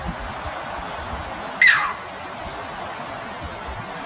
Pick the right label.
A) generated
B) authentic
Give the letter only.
B